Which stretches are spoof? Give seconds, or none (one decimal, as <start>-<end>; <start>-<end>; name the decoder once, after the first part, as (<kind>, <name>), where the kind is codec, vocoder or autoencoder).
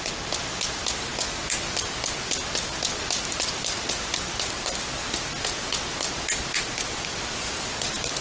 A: none